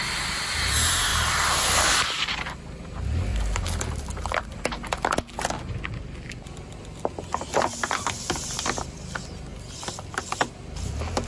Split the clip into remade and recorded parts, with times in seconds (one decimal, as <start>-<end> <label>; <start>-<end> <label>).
0.0-1.1 recorded; 1.1-2.8 remade; 2.8-3.3 recorded; 3.3-4.6 remade; 4.6-11.3 recorded